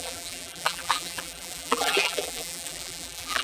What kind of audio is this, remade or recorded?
remade